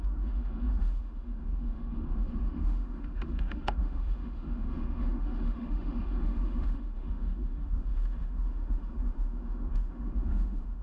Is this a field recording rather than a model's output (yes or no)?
no